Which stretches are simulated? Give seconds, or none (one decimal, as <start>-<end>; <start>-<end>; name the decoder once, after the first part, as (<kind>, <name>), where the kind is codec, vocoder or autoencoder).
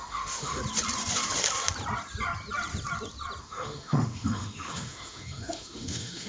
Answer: 0.0-0.6 (autoencoder, DAC-VAE); 3.4-6.3